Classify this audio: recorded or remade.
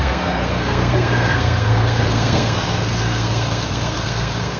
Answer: remade